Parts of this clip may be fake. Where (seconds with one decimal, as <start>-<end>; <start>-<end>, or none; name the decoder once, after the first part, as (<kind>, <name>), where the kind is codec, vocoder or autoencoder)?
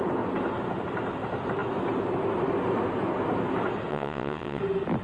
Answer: 3.9-4.6 (vocoder, WaveNeXt)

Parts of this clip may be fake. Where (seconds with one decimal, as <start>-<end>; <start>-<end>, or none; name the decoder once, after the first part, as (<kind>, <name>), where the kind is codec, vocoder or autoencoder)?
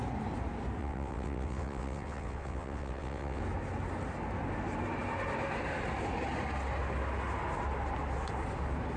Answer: 0.8-3.4 (vocoder, WaveNeXt)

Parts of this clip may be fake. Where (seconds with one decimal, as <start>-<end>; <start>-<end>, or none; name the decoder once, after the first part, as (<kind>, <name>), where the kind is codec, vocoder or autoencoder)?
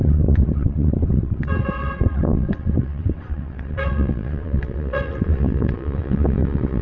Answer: 0.0-6.8 (vocoder, WaveNeXt)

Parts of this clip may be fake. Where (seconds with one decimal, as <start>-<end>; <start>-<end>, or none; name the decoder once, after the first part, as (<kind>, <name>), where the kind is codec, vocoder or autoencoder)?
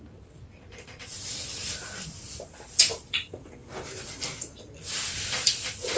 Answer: 1.0-1.7 (vocoder, WaveNeXt)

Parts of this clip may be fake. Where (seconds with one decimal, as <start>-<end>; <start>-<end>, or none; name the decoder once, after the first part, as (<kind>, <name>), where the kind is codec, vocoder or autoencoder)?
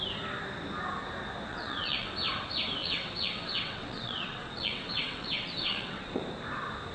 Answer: 1.5-2.1 (vocoder, WaveNeXt); 2.8-6.2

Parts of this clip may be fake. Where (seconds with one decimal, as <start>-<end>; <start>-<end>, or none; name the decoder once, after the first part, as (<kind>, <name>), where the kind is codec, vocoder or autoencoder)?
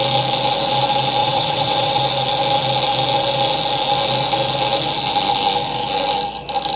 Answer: 1.2-2.0 (vocoder, WaveNeXt)